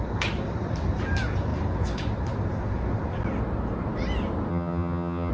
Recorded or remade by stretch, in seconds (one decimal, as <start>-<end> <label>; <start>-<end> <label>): 0.0-4.5 recorded; 4.5-5.3 remade